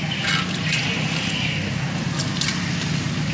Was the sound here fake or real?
real